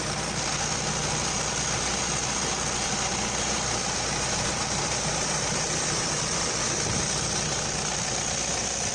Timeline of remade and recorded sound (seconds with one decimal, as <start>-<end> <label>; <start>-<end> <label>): 0.0-3.8 recorded; 3.8-6.5 remade; 6.5-8.9 recorded